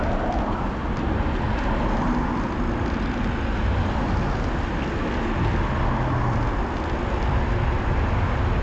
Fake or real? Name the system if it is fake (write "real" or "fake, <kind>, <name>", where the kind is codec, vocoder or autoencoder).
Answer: real